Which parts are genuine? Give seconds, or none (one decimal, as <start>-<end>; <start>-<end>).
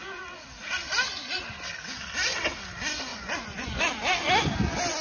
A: 0.0-3.1; 3.8-5.0